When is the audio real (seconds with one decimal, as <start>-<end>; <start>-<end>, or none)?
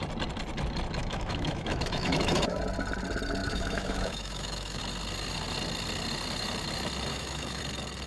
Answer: 0.0-1.0; 2.6-3.4; 4.8-7.1; 7.6-8.1